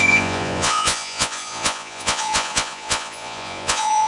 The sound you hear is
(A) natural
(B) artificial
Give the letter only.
B